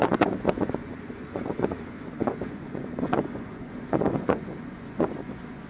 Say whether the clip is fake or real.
fake